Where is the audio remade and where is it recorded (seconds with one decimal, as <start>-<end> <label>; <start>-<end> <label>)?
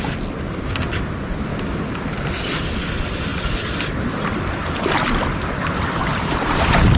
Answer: 0.0-7.0 recorded